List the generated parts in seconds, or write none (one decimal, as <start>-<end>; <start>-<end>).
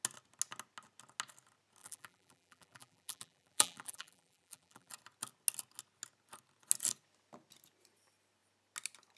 1.8-4.9